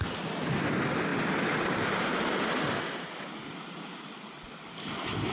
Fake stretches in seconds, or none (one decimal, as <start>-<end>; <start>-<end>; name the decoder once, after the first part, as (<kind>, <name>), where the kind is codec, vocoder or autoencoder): none